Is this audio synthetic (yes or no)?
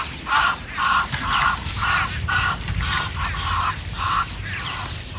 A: no